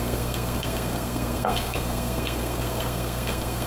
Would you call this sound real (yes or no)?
no